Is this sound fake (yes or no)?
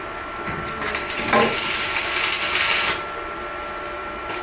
no